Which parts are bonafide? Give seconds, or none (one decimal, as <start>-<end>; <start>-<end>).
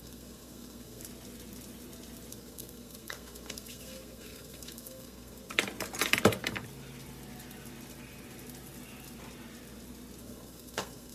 1.0-2.3; 5.5-10.2